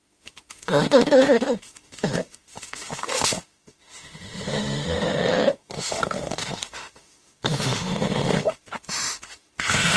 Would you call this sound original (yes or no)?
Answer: no